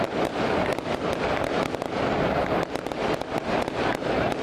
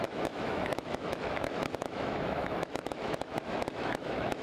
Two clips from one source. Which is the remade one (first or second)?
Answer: second